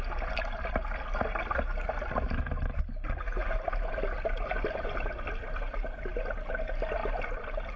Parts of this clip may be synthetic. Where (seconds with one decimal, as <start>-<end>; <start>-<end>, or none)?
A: 3.4-6.1; 7.0-7.8